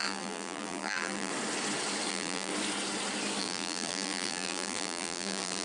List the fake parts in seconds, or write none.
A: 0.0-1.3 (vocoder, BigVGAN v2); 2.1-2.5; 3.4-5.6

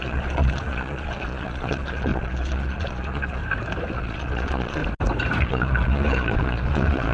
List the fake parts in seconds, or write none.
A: 0.0-3.4 (vocoder, Vocos); 3.9-4.8; 5.4-7.1

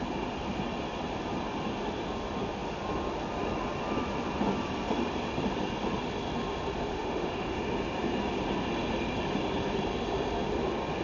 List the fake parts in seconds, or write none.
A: 6.9-7.6 (autoencoder, DAC-VAE)

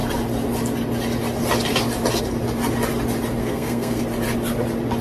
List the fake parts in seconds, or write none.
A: 3.4-4.0 (codec, SNAC)